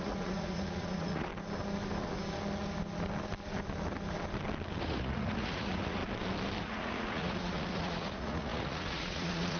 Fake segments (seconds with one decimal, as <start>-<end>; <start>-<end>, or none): 0.0-1.3; 4.8-6.0; 6.6-9.6